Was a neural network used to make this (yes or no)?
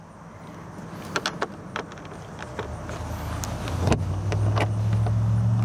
no